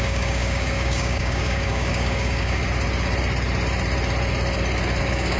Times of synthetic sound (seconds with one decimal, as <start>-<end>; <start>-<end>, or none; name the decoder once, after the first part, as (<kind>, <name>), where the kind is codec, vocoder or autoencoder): 0.0-2.6 (codec, DAC); 5.0-5.4

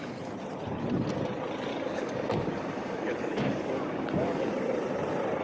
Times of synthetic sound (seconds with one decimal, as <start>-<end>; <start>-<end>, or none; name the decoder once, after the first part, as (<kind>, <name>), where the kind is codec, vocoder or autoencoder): 1.7-4.5 (codec, DAC)

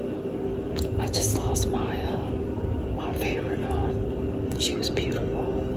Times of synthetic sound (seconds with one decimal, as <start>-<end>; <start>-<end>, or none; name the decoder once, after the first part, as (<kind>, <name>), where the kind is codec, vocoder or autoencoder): 0.0-1.5 (codec, DAC); 2.1-4.7; 5.2-5.8

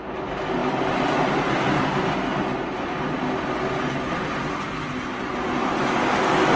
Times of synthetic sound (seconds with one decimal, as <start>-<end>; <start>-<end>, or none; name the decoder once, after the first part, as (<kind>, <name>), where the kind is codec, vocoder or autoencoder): none

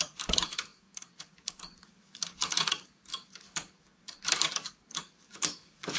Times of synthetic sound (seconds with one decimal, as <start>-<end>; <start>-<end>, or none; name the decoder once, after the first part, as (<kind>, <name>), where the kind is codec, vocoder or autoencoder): 0.0-6.0 (codec, DAC)

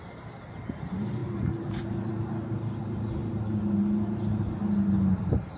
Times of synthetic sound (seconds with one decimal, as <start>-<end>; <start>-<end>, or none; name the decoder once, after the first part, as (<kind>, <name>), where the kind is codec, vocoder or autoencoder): none

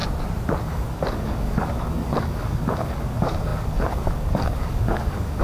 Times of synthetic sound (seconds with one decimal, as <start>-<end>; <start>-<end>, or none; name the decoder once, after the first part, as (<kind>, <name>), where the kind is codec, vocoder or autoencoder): 0.6-5.4 (codec, DAC)

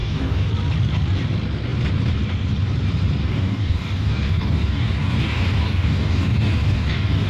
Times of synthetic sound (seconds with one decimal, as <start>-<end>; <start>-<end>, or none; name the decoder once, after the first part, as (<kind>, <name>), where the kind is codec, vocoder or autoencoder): 0.0-0.5 (codec, DAC); 3.2-7.3